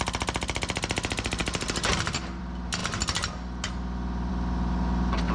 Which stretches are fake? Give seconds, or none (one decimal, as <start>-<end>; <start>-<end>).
none